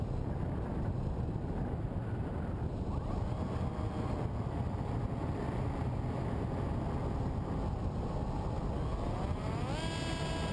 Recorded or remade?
recorded